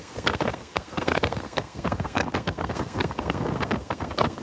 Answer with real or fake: fake